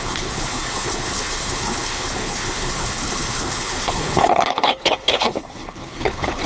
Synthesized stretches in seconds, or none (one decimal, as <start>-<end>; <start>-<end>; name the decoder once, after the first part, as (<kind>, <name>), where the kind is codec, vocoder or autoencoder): 0.0-6.5 (codec, HILCodec)